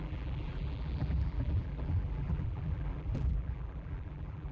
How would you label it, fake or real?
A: fake